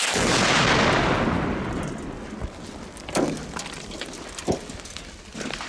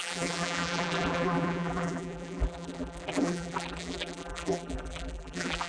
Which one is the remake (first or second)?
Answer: second